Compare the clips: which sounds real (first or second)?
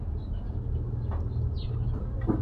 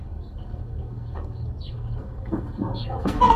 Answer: first